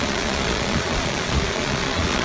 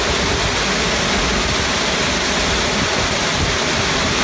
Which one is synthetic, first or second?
first